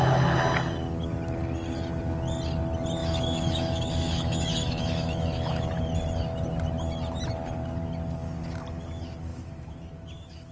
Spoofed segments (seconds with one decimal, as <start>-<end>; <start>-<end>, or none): 3.0-5.8; 9.3-10.5